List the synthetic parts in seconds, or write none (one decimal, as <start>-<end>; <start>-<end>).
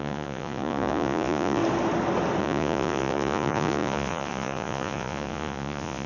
0.0-1.6; 2.4-6.1